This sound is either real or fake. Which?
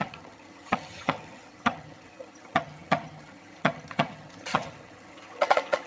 fake